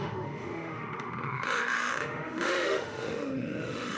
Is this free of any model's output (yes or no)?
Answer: no